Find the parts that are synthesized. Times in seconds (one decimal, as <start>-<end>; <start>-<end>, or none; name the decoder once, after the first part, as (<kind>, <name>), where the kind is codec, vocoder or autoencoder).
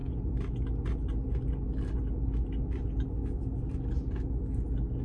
none